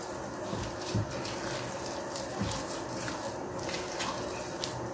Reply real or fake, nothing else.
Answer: real